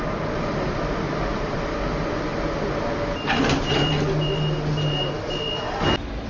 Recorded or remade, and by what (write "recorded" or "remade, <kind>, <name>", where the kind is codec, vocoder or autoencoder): recorded